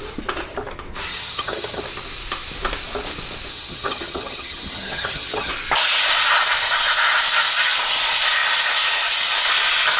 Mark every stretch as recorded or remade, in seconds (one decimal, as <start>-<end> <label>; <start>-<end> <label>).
0.0-1.1 recorded; 1.1-1.8 remade; 1.8-3.5 recorded; 3.5-5.5 remade; 5.5-10.0 recorded